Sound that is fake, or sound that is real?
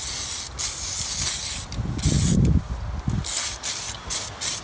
real